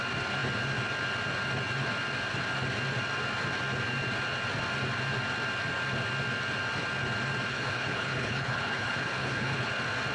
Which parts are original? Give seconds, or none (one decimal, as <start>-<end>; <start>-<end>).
0.0-7.5; 9.7-10.1